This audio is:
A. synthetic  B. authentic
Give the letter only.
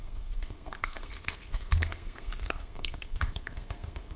A